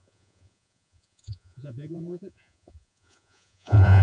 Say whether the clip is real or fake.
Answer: fake